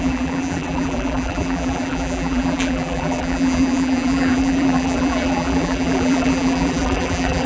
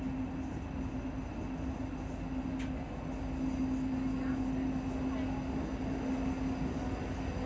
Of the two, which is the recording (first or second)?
second